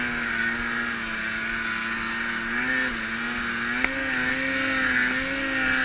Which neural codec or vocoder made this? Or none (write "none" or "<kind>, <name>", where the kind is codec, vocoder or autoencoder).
none